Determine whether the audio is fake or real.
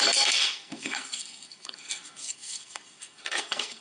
fake